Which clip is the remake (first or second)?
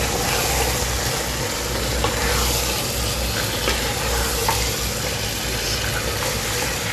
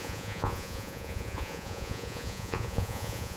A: second